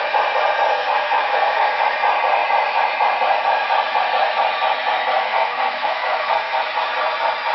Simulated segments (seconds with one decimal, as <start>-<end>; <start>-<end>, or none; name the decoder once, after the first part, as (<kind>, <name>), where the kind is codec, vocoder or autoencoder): 0.7-1.8 (codec, SNAC); 5.2-6.6